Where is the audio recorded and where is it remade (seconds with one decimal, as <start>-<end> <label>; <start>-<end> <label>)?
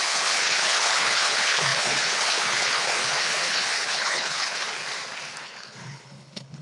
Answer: 0.0-4.8 remade; 4.8-5.4 recorded; 5.4-6.6 remade